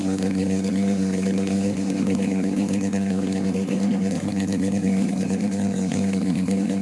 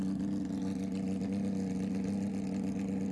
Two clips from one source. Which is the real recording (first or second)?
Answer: second